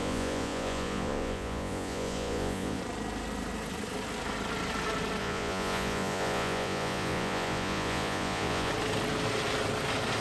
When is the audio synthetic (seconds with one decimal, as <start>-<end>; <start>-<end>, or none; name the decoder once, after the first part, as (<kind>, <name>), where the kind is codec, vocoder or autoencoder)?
0.0-2.8 (vocoder, Vocos); 5.2-8.7